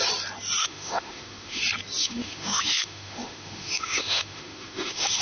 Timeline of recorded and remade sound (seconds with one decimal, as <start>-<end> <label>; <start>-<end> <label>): 0.0-0.6 recorded; 0.6-1.6 remade; 1.6-2.0 recorded; 2.0-5.2 remade